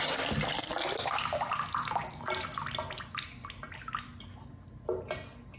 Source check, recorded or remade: recorded